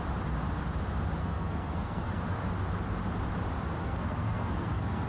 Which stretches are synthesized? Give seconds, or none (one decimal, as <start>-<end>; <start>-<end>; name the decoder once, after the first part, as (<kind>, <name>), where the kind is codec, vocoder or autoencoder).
1.2-2.2 (codec, SNAC); 3.8-5.1